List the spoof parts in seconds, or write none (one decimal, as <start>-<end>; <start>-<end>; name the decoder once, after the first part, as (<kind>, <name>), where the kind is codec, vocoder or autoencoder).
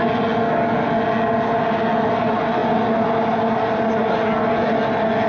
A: none